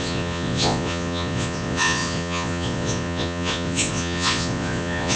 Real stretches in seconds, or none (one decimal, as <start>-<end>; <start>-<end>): none